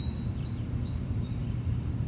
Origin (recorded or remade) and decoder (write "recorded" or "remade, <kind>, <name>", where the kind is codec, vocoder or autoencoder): recorded